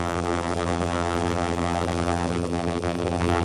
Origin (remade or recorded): remade